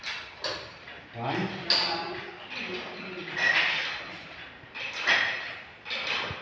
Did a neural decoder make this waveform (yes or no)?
no